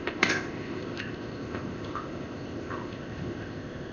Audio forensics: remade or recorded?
remade